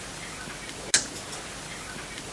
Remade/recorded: recorded